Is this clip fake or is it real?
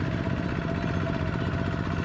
real